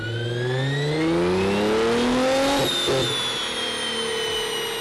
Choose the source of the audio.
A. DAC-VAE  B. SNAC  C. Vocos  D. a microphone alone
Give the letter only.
D